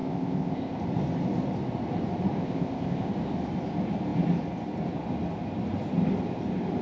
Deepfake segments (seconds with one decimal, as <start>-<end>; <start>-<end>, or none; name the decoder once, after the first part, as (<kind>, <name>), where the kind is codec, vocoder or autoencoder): 0.0-0.8 (codec, ZipCodec); 2.4-3.1